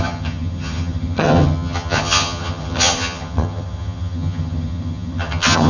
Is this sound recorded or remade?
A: remade